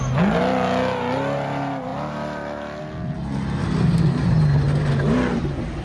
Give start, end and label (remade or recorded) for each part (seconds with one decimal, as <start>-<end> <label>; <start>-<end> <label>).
0.0-5.8 recorded